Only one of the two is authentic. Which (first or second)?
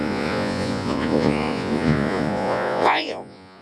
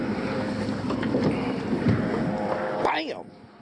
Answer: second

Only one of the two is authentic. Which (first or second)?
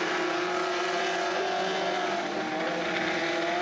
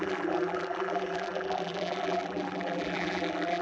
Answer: first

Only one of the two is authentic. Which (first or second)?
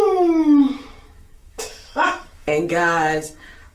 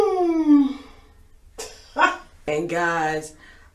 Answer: second